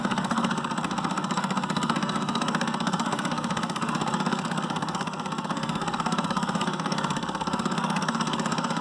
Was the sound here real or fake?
fake